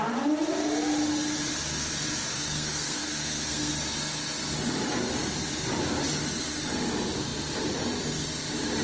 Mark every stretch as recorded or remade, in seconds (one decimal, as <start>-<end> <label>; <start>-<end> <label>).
0.0-2.3 recorded; 2.3-3.7 remade; 3.7-8.8 recorded